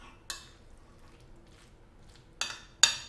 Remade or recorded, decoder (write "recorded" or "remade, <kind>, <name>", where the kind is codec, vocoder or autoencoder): recorded